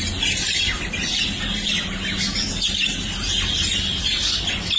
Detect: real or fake real